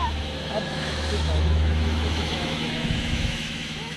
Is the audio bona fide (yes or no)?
no